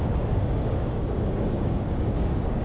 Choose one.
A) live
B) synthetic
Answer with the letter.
B